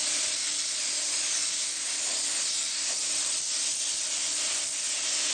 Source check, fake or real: real